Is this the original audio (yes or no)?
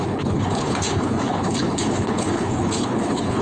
no